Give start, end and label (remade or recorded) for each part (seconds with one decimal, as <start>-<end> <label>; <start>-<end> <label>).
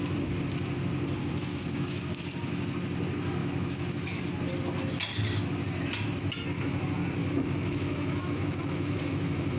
0.0-1.5 recorded; 1.5-2.2 remade; 2.2-3.4 recorded; 3.4-4.2 remade; 4.2-7.2 recorded; 7.2-9.6 remade